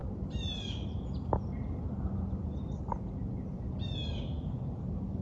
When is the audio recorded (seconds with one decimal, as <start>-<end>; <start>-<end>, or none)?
0.0-5.2